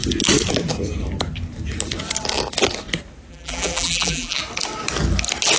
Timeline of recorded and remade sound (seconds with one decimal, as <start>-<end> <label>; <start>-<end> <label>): 0.0-3.3 recorded; 3.3-4.4 remade; 4.4-5.6 recorded